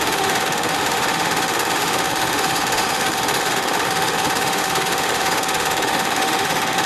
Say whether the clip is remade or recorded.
remade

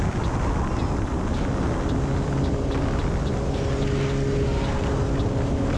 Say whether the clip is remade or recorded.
recorded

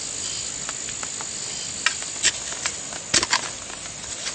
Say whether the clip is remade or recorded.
recorded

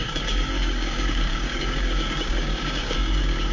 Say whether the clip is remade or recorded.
remade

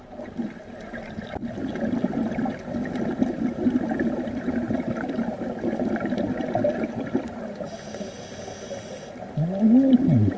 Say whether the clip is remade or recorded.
recorded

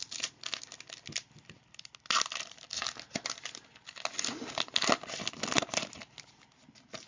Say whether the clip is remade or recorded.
recorded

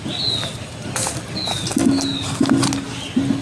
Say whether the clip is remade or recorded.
recorded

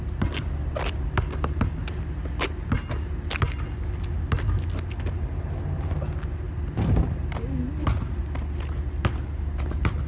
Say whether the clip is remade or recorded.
recorded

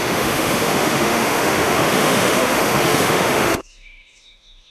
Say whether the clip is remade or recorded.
remade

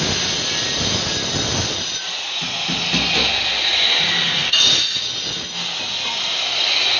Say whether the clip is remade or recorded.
recorded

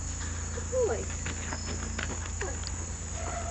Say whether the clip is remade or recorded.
recorded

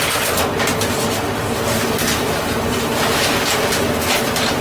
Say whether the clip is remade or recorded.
recorded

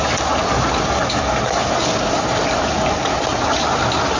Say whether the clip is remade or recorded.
recorded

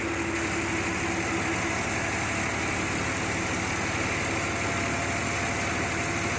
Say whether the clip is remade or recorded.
recorded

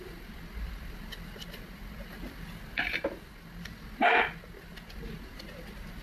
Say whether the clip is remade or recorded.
recorded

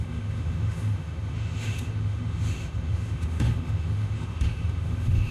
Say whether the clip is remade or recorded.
remade